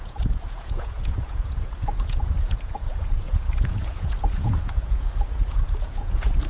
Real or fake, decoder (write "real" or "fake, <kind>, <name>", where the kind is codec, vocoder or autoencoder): fake, vocoder, Vocos